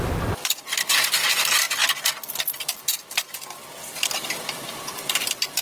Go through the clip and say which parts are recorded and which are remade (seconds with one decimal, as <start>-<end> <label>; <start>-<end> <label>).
0.0-5.6 remade